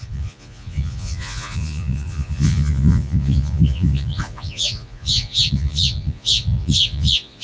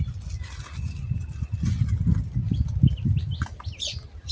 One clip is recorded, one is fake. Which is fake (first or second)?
first